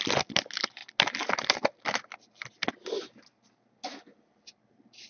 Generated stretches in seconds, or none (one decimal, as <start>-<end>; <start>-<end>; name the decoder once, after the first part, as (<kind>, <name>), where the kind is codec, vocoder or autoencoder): none